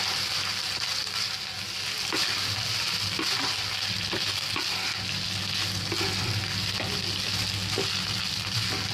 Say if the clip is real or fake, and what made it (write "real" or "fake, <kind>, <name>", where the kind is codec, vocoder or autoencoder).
real